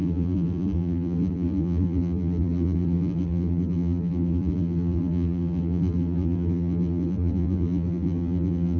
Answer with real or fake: fake